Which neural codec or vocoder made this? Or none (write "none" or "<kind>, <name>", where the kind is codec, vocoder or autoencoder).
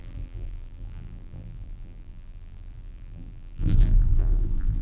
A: vocoder, BigVGAN v2